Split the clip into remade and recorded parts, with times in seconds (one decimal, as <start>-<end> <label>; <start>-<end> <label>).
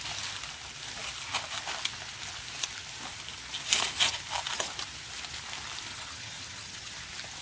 0.0-5.9 recorded; 5.9-7.0 remade; 7.0-7.4 recorded